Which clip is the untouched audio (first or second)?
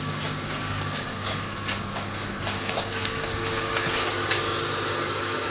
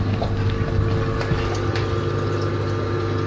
second